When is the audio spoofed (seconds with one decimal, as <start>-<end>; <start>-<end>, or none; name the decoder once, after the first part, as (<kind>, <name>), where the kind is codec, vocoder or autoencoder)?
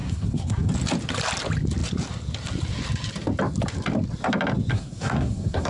0.0-0.7 (codec, SNAC); 4.7-5.7